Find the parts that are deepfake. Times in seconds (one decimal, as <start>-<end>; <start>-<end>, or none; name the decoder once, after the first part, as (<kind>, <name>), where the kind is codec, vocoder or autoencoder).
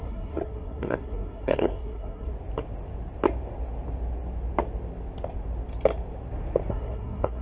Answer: 0.0-2.3 (codec, SNAC); 6.7-7.4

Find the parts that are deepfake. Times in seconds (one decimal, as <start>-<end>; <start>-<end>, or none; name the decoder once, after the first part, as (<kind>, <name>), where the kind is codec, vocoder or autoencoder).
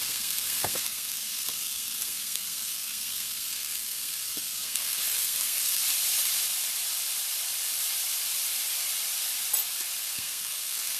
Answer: 0.0-5.8 (codec, SNAC); 10.0-11.0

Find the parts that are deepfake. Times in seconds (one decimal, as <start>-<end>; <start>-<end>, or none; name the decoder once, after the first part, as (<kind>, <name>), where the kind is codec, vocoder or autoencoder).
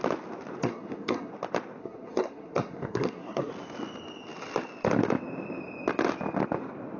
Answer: 0.6-1.3 (codec, SNAC); 1.8-3.5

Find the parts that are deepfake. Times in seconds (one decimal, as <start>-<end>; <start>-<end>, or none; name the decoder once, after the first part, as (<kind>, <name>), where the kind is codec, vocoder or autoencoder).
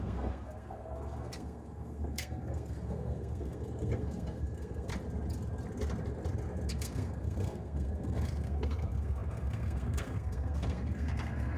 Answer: 0.0-4.9 (codec, SNAC); 6.7-11.6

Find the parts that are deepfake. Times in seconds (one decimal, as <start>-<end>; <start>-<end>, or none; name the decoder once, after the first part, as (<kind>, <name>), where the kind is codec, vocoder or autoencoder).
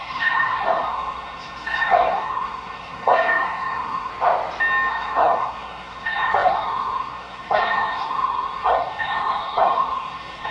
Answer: 0.0-4.1 (codec, SNAC); 4.9-10.5